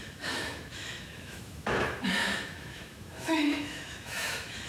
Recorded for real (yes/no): no